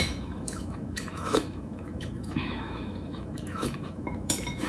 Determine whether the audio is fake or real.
fake